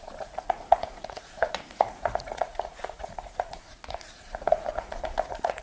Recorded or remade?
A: remade